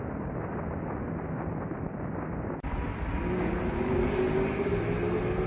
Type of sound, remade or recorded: recorded